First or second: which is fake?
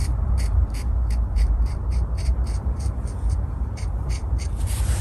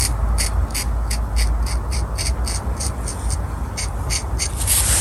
first